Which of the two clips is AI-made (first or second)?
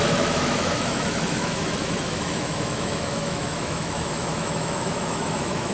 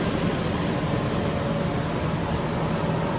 first